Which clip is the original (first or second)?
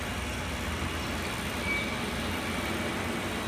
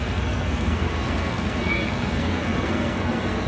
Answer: first